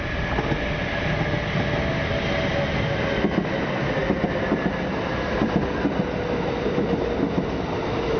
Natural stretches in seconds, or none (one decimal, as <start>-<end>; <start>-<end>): 0.0-8.2